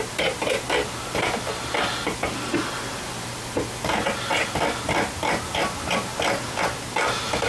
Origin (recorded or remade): recorded